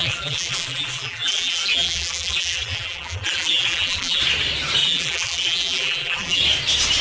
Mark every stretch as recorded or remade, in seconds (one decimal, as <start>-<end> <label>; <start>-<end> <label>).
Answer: 0.0-4.2 remade; 4.2-4.8 recorded; 4.8-6.4 remade; 6.4-7.0 recorded